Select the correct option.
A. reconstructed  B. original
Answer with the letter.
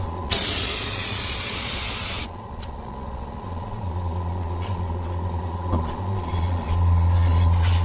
A